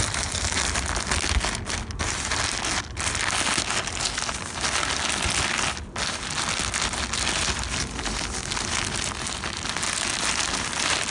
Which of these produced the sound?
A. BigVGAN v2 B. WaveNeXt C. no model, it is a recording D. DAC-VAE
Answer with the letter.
C